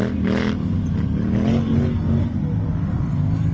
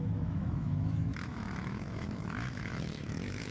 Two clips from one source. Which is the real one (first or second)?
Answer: first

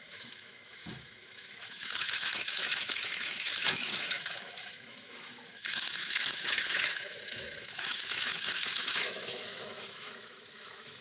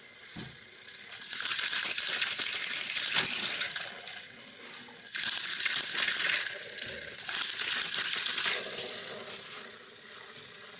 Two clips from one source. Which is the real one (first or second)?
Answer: second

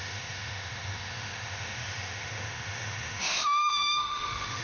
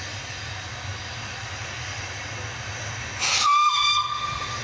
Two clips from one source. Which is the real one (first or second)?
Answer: second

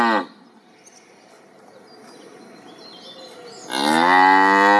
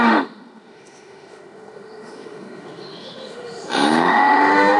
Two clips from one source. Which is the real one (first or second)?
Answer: first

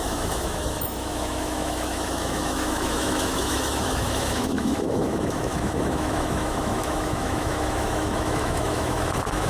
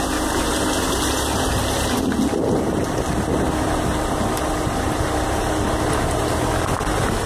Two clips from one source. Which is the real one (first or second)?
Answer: second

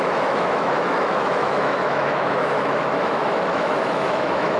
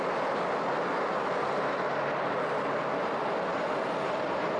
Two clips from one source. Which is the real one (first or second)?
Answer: second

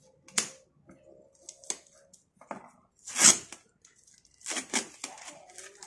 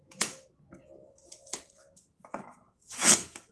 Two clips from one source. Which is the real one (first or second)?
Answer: first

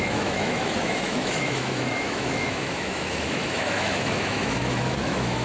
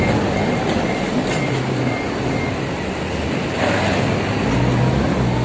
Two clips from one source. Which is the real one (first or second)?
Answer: second